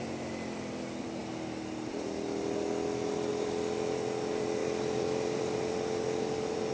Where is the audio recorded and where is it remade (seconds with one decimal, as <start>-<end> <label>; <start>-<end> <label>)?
0.0-4.6 recorded; 4.6-5.6 remade; 5.6-6.7 recorded